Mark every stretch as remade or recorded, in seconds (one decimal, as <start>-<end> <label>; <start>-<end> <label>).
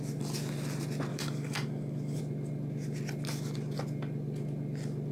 0.0-1.1 recorded; 1.1-2.2 remade; 2.2-5.1 recorded